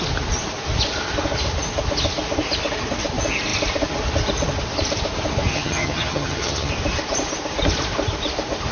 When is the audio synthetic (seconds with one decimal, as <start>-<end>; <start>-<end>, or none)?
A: 5.5-6.7